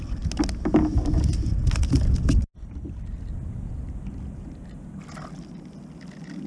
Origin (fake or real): real